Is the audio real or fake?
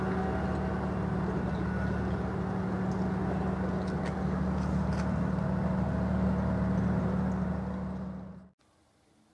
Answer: real